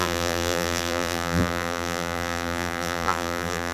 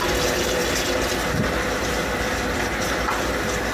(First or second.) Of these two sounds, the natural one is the second